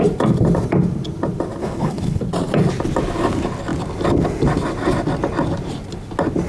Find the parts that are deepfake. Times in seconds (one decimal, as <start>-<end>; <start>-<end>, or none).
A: 1.6-2.2